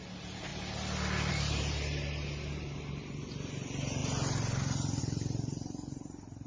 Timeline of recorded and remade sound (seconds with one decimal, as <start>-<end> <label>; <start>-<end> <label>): 0.0-0.5 remade; 0.5-1.3 recorded; 1.3-4.0 remade; 4.0-5.0 recorded; 5.0-6.5 remade